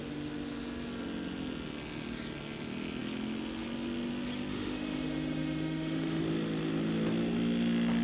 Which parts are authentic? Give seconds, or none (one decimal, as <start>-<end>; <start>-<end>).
0.0-4.5; 6.2-8.0